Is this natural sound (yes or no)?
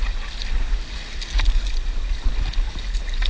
no